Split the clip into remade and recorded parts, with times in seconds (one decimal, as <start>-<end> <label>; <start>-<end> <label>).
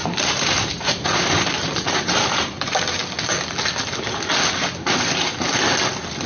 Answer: 0.0-3.0 remade; 3.0-4.8 recorded; 4.8-5.3 remade; 5.3-6.3 recorded